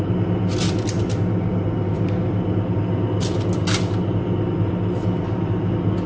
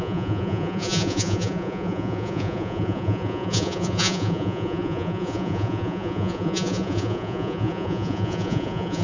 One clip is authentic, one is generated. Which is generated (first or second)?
second